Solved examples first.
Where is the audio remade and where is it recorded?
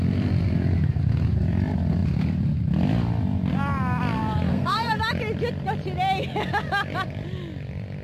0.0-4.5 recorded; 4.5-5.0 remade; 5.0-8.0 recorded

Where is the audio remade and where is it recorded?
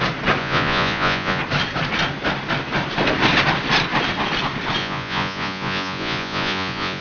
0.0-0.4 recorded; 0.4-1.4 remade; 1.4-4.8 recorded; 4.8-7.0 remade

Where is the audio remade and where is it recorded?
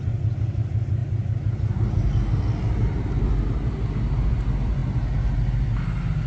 0.0-6.3 recorded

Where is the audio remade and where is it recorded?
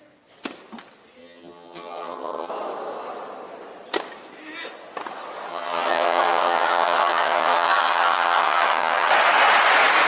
0.0-1.2 recorded; 1.2-2.5 remade; 2.5-5.5 recorded; 5.5-9.1 remade; 9.1-10.1 recorded